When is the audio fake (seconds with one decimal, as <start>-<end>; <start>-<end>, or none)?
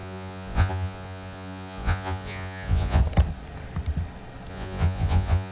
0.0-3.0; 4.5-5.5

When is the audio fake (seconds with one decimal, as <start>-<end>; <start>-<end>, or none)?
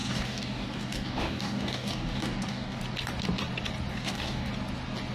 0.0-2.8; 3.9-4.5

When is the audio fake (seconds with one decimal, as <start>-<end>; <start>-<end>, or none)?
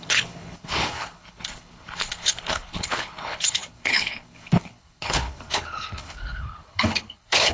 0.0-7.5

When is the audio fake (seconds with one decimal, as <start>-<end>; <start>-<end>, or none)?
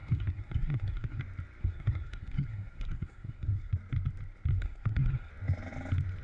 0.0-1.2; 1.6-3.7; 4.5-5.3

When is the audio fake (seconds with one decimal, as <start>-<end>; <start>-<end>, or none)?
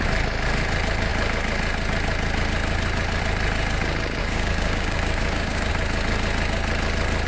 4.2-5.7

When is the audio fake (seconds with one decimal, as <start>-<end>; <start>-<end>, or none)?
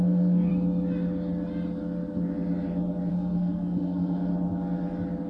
0.0-0.5; 3.1-4.3